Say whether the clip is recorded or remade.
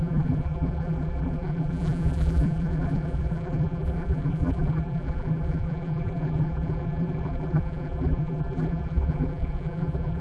remade